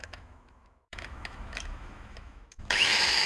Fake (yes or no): yes